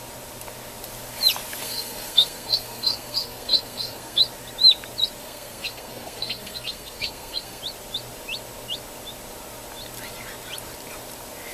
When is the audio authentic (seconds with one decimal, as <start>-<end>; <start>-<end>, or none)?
0.0-1.6; 4.2-5.2; 7.6-11.5